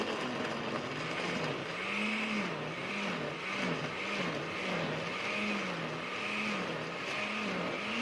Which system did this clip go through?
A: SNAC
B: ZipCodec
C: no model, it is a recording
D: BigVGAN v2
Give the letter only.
C